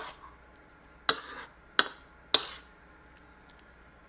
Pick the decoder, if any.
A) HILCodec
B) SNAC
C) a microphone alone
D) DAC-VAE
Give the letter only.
C